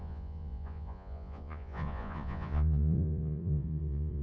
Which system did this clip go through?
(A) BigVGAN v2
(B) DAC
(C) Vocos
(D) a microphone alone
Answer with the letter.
C